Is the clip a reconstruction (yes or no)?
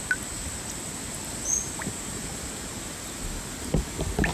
no